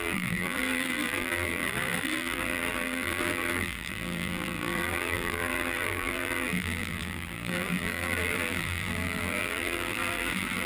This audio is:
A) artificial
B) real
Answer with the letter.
A